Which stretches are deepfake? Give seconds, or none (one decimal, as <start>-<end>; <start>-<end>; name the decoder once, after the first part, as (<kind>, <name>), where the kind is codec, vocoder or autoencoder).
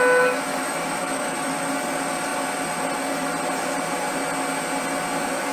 0.5-1.7 (autoencoder, DAC-VAE)